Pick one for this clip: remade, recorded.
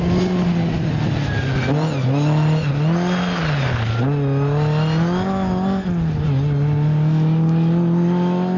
recorded